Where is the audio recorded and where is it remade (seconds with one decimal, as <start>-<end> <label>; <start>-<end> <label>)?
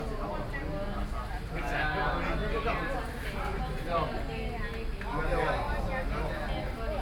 0.0-7.0 recorded